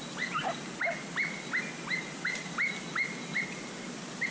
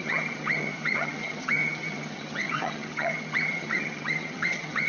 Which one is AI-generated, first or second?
second